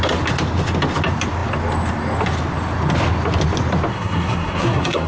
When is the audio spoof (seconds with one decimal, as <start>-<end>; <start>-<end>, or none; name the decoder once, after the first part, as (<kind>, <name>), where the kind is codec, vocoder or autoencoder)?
3.9-5.1 (codec, SNAC)